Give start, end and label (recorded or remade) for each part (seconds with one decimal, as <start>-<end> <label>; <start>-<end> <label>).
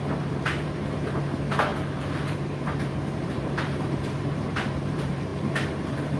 0.0-1.7 remade; 1.7-2.2 recorded; 2.2-6.2 remade